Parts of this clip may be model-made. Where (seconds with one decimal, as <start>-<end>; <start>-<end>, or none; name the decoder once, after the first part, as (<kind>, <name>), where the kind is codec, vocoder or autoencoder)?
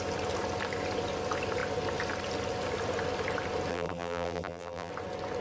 3.7-4.9 (vocoder, BigVGAN v2)